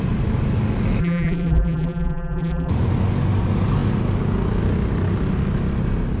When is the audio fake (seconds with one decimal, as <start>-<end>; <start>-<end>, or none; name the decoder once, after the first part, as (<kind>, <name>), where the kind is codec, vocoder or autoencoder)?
1.0-2.7 (vocoder, BigVGAN v2)